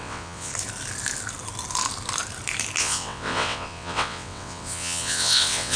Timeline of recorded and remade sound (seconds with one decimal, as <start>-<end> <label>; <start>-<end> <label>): 0.0-0.5 remade; 0.5-2.8 recorded; 2.8-5.8 remade